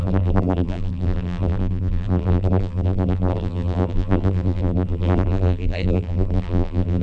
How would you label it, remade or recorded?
remade